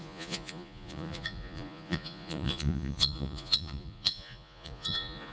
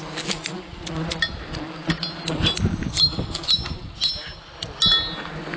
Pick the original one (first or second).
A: second